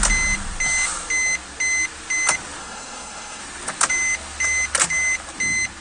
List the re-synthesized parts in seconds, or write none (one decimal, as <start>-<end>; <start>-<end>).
2.6-3.4